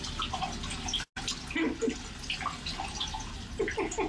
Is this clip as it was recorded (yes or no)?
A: yes